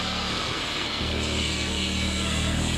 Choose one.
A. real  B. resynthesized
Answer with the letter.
B